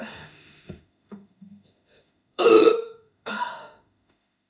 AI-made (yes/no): yes